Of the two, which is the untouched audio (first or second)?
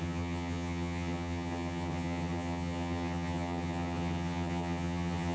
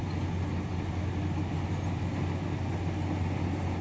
second